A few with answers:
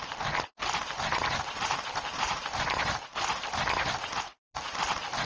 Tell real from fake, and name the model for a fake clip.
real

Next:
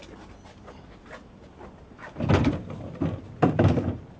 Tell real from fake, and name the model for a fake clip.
real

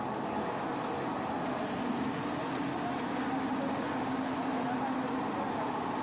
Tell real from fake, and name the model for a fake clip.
real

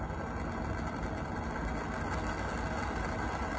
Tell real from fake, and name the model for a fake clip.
real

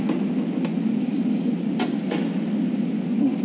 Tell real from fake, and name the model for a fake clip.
real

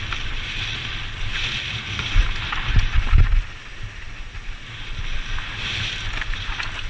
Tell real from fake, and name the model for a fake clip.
real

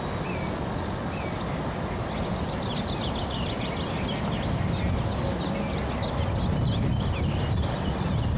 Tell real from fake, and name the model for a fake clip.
real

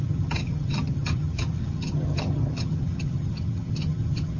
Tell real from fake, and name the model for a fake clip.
fake, vocoder, HiFi-GAN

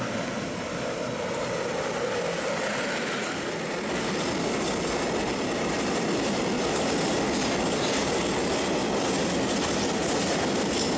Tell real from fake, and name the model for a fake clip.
real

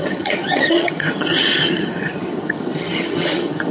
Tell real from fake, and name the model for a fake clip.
fake, vocoder, HiFi-GAN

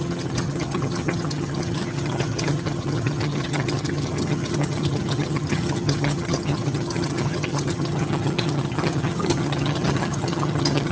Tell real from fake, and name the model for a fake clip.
fake, vocoder, HiFi-GAN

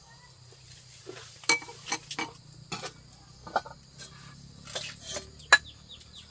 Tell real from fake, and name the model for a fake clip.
real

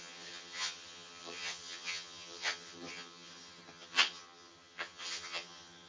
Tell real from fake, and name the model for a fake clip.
fake, vocoder, HiFi-GAN